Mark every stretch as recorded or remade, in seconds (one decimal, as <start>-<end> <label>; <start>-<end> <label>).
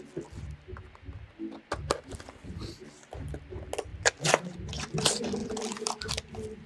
0.0-5.4 recorded; 5.4-6.1 remade; 6.1-6.7 recorded